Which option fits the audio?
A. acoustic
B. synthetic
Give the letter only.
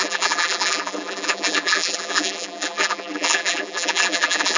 B